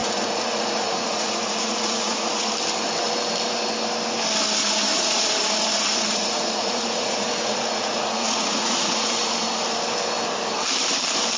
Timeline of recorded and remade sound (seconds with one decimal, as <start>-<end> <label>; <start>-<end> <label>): 0.0-2.5 remade; 2.5-4.6 recorded; 4.6-9.3 remade; 9.3-11.4 recorded